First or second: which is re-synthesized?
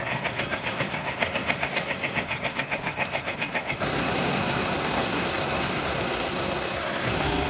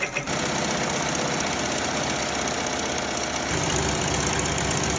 first